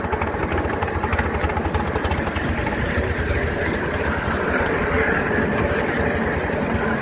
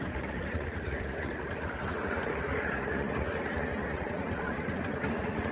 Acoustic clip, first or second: first